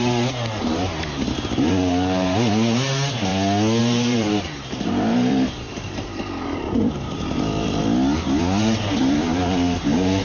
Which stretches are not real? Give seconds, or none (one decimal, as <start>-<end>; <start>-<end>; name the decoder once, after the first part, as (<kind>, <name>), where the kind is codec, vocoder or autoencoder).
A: 0.0-3.3 (vocoder, BigVGAN v2); 3.8-7.8; 8.4-10.2